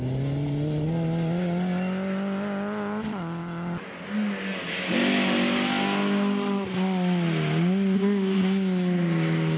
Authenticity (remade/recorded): recorded